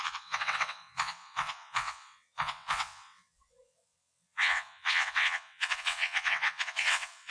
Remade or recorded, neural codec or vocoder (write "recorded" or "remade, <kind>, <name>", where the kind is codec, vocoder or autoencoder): remade, vocoder, WaveNeXt